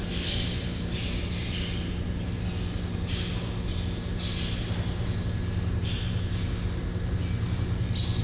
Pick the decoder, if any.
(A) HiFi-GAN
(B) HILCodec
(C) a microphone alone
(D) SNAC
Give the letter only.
C